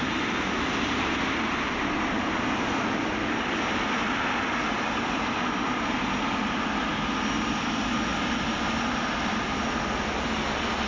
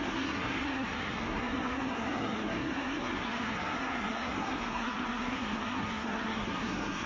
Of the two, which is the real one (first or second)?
first